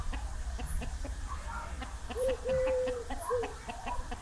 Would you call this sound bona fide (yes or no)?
no